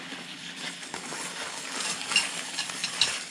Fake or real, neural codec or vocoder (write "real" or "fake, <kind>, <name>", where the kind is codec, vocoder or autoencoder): fake, codec, DAC